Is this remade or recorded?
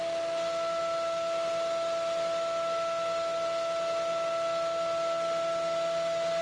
recorded